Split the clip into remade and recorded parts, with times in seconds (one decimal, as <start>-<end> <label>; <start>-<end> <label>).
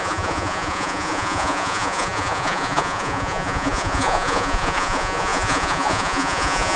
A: 0.0-6.8 remade